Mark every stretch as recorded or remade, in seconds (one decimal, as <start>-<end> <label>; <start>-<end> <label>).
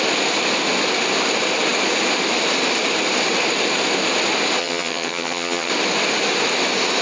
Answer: 0.0-4.6 recorded; 4.6-5.7 remade; 5.7-7.0 recorded